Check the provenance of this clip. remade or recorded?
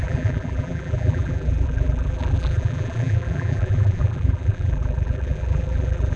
remade